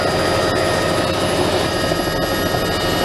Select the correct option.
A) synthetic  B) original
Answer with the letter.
B